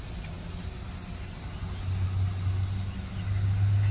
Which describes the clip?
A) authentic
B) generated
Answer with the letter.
A